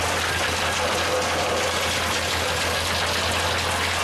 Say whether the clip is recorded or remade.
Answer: recorded